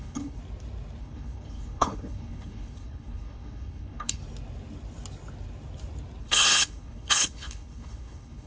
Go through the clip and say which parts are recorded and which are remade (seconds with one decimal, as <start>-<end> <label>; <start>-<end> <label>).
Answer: 0.0-0.4 remade; 0.4-1.0 recorded; 1.0-4.2 remade; 4.2-6.2 recorded; 6.2-8.5 remade